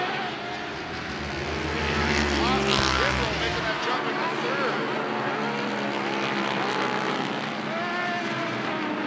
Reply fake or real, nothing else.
real